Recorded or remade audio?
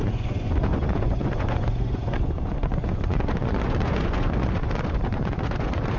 remade